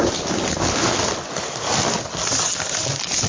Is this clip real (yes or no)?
yes